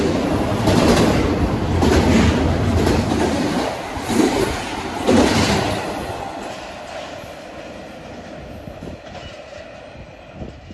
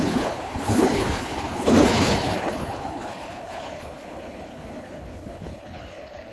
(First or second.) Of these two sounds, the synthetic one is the second